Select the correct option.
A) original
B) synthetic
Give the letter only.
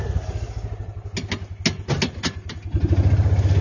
A